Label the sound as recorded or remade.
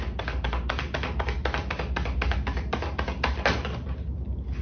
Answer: recorded